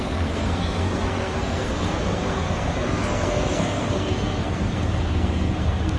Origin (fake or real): fake